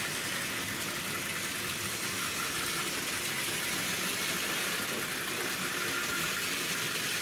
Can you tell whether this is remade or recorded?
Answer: recorded